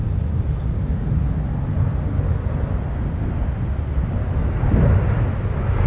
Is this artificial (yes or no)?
no